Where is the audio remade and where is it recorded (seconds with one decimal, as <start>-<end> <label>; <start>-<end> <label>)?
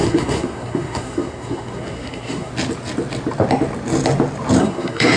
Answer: 0.0-2.5 remade; 2.5-4.6 recorded; 4.6-5.2 remade